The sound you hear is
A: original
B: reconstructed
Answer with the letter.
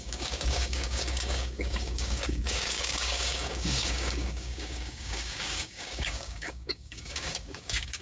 B